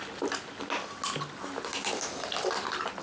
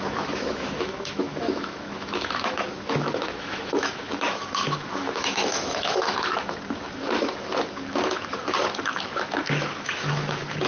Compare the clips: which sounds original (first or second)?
first